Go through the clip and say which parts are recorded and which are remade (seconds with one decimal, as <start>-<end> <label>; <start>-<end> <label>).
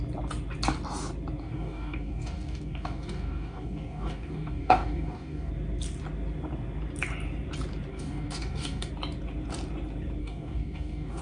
0.0-1.4 recorded; 1.4-5.5 remade; 5.5-7.9 recorded; 7.9-8.9 remade; 8.9-10.2 recorded; 10.2-11.2 remade